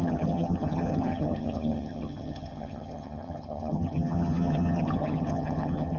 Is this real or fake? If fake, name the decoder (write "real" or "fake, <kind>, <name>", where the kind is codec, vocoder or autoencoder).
fake, vocoder, HiFi-GAN